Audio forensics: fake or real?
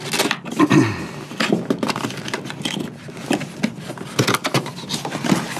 real